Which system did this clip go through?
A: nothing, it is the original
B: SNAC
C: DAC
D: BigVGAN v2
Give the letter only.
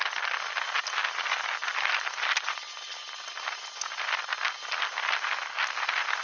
A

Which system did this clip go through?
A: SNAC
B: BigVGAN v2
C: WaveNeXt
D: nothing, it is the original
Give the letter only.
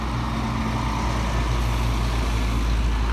D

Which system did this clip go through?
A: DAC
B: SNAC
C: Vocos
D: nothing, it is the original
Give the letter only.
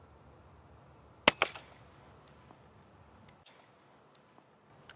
D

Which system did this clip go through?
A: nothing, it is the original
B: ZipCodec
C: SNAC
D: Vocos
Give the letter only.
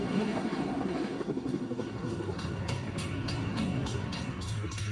C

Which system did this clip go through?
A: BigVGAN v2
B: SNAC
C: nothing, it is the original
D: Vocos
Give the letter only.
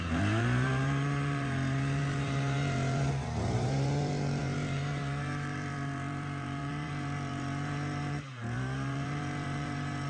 A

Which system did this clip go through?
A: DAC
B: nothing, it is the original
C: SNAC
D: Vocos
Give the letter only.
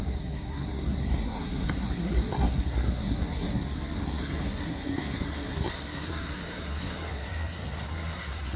C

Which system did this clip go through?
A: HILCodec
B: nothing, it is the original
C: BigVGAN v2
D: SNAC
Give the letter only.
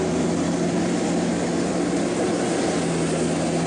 B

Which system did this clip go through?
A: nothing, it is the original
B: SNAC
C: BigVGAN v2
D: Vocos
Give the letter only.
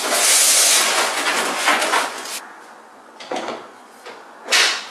D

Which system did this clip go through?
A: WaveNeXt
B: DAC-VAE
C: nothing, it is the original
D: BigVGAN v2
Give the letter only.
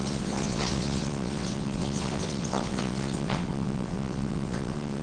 A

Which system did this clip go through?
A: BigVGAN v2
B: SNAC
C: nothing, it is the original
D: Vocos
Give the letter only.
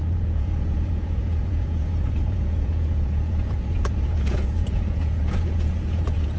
D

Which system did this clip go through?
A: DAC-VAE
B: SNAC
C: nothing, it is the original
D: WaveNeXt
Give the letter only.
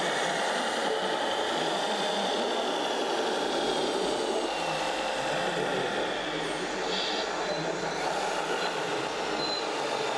C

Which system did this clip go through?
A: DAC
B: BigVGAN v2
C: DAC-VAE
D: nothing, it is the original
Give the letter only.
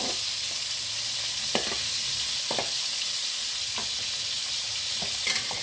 D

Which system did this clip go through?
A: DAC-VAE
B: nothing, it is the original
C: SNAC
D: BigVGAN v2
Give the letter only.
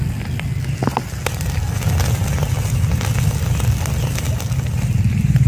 B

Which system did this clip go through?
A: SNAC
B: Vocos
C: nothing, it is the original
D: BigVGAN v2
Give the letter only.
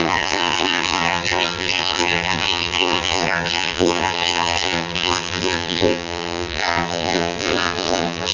D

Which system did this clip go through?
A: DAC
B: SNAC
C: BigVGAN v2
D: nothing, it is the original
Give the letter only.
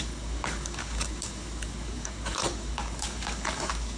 A